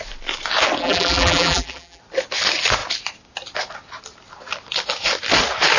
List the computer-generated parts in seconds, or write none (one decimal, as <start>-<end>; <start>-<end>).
0.8-2.0